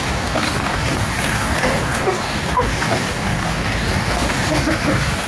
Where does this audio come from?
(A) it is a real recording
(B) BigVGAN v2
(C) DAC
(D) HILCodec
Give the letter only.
C